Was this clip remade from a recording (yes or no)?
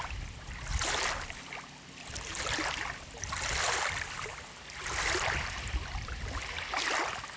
no